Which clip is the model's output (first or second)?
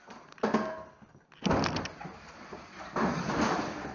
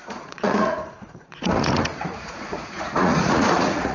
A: second